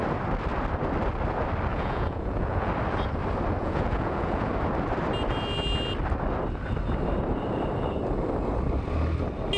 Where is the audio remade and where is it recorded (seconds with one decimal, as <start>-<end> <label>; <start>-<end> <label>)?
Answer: 0.0-1.7 recorded; 1.7-2.7 remade; 2.7-3.6 recorded; 3.6-4.5 remade; 4.5-9.6 recorded

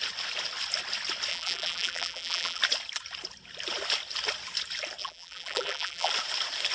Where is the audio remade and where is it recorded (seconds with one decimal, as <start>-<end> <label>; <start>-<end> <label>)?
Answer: 0.0-1.3 recorded; 1.3-2.6 remade; 2.6-5.0 recorded; 5.0-6.1 remade; 6.1-6.7 recorded

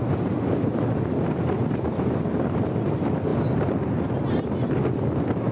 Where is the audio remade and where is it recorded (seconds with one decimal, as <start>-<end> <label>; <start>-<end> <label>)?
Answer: 0.0-5.5 recorded

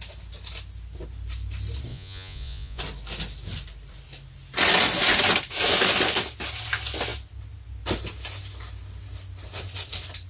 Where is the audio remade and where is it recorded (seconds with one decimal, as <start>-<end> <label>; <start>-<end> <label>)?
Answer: 0.0-1.9 recorded; 1.9-2.8 remade; 2.8-10.3 recorded

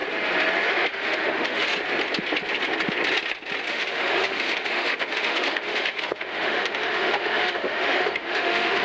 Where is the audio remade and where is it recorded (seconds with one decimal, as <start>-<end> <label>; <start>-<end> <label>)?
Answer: 0.0-0.7 recorded; 0.7-1.7 remade; 1.7-3.7 recorded; 3.7-8.8 remade

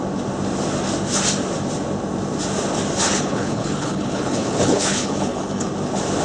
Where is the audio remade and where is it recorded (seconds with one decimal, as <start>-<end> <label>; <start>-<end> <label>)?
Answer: 0.0-3.1 recorded; 3.1-5.7 remade; 5.7-6.2 recorded

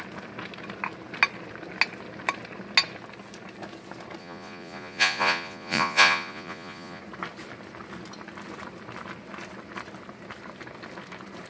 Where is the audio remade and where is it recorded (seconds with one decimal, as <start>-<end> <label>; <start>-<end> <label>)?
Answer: 0.0-4.2 recorded; 4.2-7.0 remade; 7.0-11.5 recorded